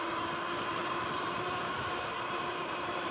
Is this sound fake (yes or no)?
yes